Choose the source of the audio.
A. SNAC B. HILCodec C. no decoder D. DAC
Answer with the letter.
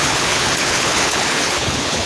B